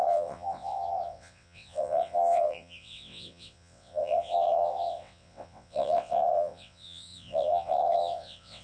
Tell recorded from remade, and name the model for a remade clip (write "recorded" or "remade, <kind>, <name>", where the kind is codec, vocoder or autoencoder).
remade, vocoder, WaveNeXt